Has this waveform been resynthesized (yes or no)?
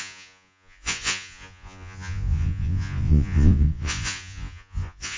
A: yes